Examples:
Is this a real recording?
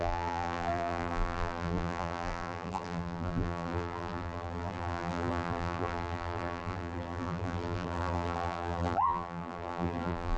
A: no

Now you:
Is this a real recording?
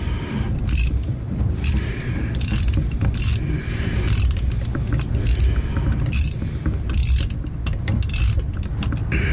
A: no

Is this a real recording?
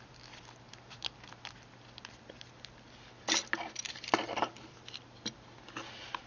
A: yes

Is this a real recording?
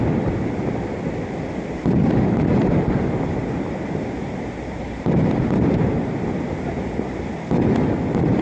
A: yes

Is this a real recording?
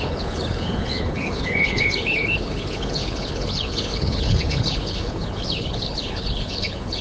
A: no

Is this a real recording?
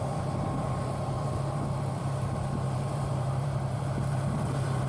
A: no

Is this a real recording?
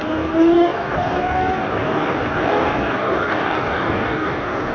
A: no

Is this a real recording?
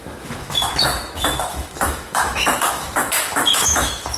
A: no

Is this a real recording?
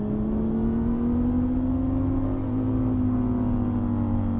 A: yes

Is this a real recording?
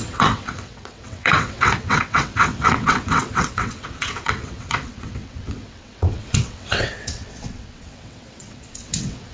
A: no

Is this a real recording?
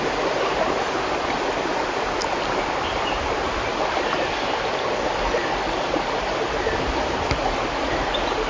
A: yes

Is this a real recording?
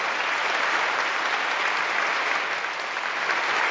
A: yes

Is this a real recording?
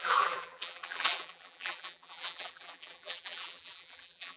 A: no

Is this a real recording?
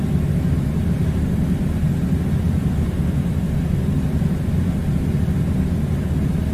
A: yes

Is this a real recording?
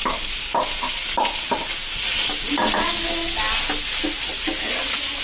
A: yes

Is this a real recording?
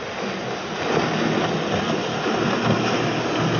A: yes